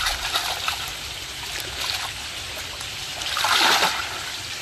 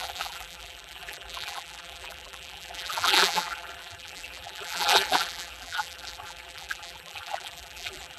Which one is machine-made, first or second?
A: second